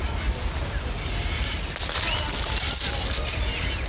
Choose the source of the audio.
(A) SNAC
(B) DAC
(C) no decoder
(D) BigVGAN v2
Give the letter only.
C